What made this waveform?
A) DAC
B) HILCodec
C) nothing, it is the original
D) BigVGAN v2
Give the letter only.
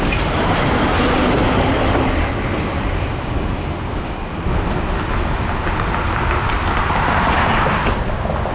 C